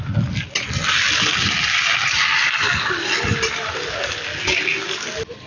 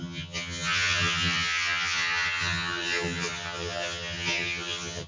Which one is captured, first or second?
first